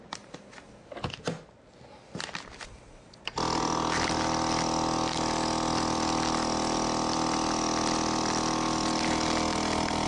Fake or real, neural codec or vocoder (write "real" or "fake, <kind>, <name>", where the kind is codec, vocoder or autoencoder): real